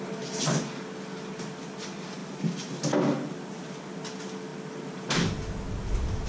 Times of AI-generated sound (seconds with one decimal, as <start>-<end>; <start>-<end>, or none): none